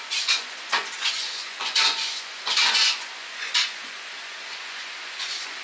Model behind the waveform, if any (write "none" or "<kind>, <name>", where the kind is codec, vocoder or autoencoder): vocoder, Vocos